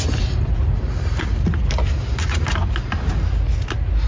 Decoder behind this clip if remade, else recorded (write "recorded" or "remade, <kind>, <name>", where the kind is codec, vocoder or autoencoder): recorded